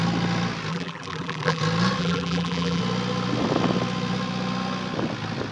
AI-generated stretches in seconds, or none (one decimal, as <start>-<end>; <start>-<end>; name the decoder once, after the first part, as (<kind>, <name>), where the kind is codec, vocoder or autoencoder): 0.7-1.6 (vocoder, BigVGAN v2); 2.0-2.8